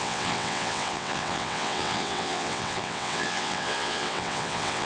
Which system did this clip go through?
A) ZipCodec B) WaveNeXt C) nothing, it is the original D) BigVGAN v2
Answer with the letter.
B